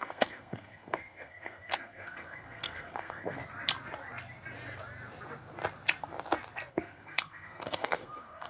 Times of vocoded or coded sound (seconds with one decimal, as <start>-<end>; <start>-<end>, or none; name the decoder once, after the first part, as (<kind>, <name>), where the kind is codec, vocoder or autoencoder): 0.0-3.4 (codec, SNAC); 6.7-8.5